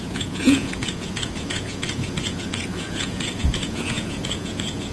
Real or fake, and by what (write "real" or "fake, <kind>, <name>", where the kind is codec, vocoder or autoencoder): fake, vocoder, Vocos